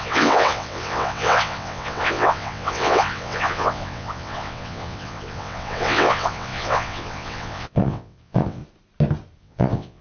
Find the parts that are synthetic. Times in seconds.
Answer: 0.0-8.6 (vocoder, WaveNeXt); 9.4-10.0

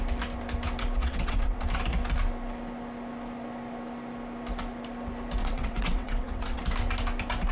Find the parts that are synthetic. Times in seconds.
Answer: 1.0-1.6 (vocoder, WaveNeXt); 5.4-6.6

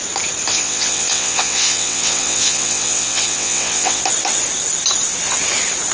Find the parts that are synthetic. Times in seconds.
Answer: 0.5-4.0 (vocoder, WaveNeXt)

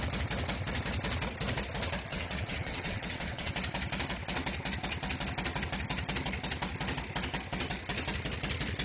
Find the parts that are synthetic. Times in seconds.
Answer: 2.1-3.5 (vocoder, WaveNeXt)

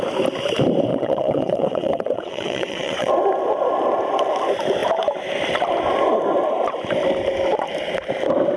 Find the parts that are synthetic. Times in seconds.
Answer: 0.9-3.1 (vocoder, WaveNeXt)

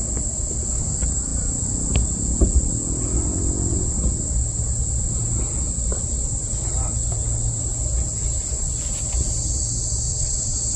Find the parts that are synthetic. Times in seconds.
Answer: 10.1-10.8 (vocoder, WaveNeXt)